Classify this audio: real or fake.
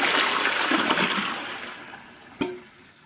real